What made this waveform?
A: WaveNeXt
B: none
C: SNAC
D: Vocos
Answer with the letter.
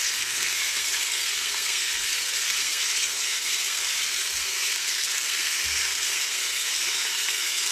C